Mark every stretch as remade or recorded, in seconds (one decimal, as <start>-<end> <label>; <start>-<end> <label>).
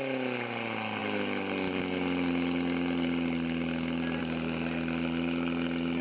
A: 0.0-6.0 recorded